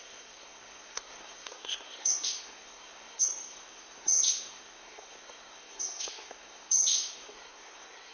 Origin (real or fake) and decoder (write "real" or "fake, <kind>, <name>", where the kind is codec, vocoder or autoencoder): fake, codec, SNAC